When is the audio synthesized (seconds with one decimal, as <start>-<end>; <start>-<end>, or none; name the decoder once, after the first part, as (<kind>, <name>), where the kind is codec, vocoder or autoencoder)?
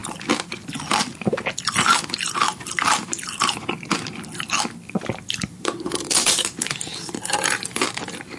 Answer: 0.0-8.4 (vocoder, BigVGAN v2)